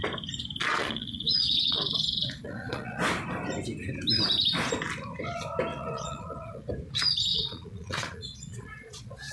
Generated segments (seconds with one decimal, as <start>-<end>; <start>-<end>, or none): 0.7-3.0; 5.7-6.7; 7.3-9.3